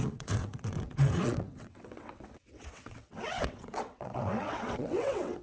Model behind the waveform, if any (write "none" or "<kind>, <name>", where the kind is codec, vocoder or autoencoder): vocoder, WaveNeXt